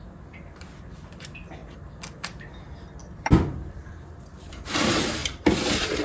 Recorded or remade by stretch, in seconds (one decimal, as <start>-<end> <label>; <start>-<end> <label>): 0.0-3.0 recorded; 3.0-3.9 remade; 3.9-5.2 recorded; 5.2-6.0 remade